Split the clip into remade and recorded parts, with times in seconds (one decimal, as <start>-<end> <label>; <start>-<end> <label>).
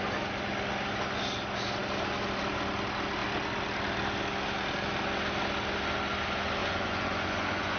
0.0-6.6 recorded; 6.6-7.8 remade